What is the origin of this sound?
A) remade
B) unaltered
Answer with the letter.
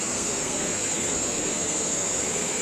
A